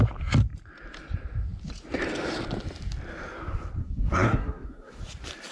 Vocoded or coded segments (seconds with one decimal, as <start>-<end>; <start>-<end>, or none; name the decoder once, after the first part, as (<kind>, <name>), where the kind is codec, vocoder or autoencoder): 3.8-5.0 (codec, SNAC)